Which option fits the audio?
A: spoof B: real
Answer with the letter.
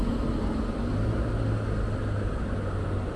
B